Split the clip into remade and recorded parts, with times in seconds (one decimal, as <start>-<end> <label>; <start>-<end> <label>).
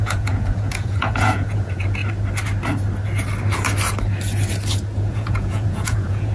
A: 0.0-2.0 remade; 2.0-5.1 recorded; 5.1-6.3 remade